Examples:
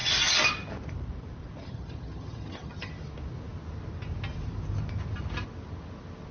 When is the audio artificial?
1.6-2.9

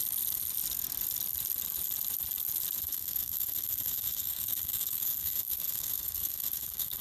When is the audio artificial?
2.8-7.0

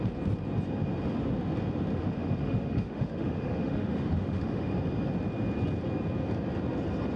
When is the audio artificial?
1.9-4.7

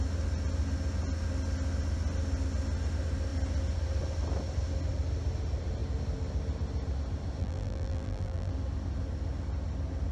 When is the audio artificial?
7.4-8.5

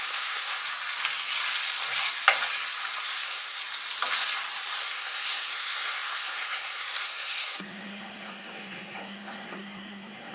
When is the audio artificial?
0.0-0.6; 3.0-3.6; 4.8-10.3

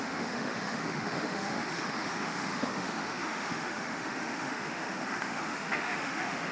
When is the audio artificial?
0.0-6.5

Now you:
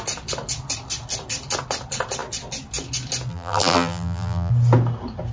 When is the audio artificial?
3.3-4.5

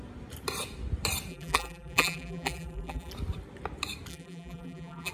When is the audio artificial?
1.3-3.1; 4.1-5.1